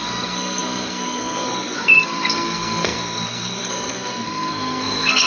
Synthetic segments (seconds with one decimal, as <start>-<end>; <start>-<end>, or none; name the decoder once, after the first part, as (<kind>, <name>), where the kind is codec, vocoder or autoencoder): 0.0-5.3 (codec, SNAC)